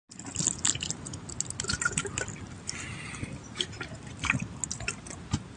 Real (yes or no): yes